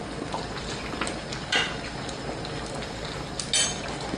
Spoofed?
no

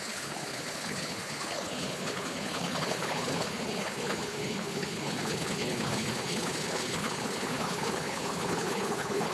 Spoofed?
yes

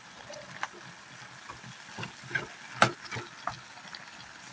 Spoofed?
no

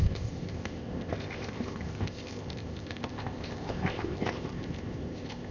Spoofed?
yes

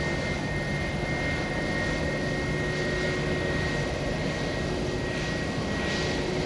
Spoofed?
no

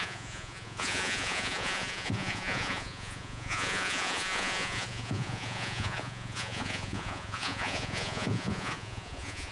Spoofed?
yes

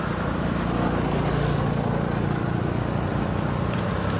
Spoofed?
no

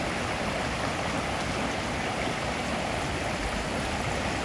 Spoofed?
no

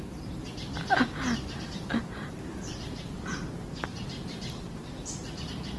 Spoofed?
no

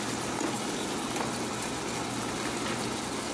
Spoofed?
no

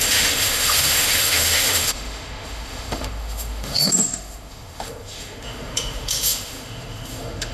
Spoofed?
yes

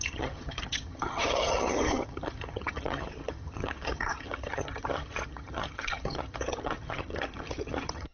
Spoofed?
yes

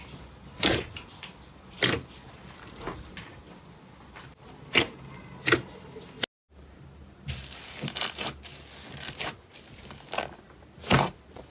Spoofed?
no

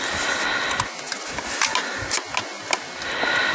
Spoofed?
no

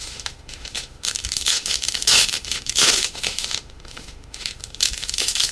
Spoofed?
yes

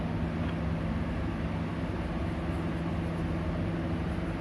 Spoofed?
no